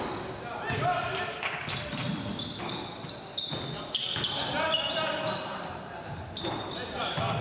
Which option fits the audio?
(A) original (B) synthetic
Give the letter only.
A